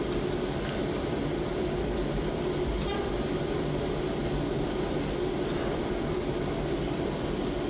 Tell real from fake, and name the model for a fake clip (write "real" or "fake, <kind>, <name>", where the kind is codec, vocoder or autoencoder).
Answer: real